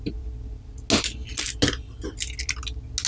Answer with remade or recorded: recorded